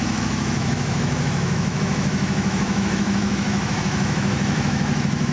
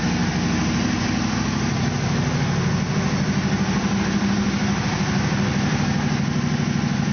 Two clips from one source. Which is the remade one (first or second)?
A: first